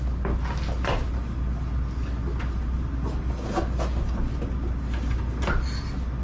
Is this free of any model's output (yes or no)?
yes